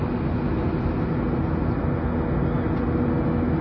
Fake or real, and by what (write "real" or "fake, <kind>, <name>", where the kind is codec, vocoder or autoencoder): real